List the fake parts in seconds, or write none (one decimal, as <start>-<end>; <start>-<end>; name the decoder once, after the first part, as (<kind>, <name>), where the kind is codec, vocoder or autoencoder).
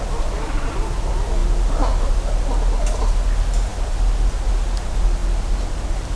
none